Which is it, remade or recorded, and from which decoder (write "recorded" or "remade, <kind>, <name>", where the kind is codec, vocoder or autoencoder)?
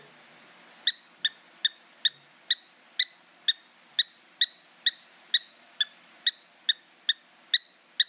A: recorded